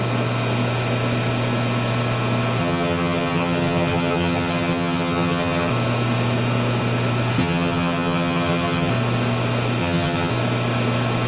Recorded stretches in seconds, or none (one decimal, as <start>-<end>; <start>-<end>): 0.0-2.6; 5.7-7.4; 8.9-9.8; 10.3-11.3